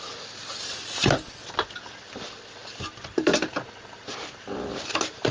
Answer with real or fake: real